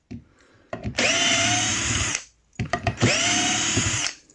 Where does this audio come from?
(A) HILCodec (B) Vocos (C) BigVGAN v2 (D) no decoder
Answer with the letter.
C